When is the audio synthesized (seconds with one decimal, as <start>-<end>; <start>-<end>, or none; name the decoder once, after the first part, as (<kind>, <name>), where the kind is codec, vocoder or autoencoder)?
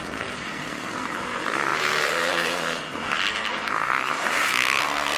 0.0-5.2 (codec, SNAC)